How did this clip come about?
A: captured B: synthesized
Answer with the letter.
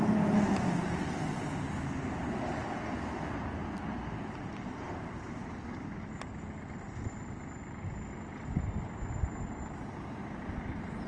A